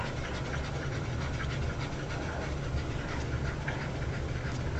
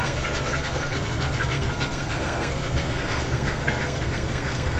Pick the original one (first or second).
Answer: first